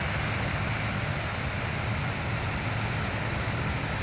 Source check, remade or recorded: recorded